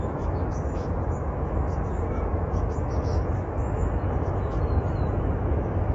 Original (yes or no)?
no